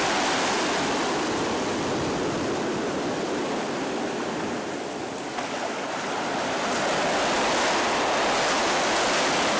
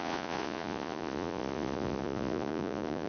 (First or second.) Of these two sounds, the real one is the first